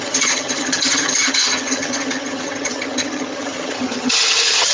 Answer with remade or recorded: remade